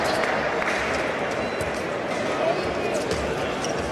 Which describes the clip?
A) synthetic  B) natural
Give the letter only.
B